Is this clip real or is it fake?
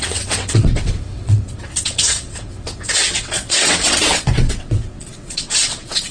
fake